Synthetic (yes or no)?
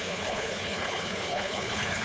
yes